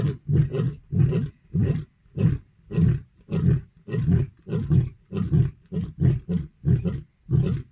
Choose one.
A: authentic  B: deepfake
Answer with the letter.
A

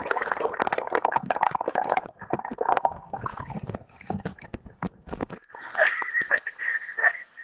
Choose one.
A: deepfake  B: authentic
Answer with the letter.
A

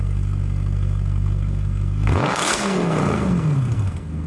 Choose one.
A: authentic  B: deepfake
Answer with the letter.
B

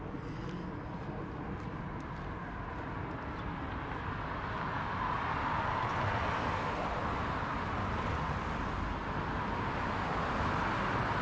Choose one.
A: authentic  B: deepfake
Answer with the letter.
A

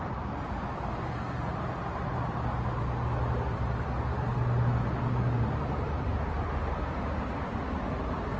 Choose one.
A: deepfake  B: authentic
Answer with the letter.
B